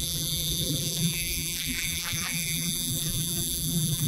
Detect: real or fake fake